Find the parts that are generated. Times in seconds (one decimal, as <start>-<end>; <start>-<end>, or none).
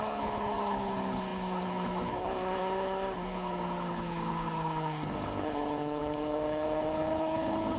0.0-7.8